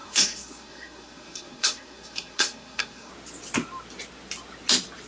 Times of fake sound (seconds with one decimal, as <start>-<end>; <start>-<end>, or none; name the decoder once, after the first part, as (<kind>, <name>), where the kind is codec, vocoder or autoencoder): 0.0-3.1 (codec, SNAC)